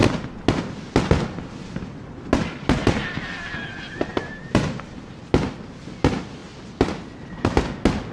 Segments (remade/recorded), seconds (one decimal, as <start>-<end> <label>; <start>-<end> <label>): 0.0-4.1 recorded; 4.1-5.2 remade; 5.2-8.1 recorded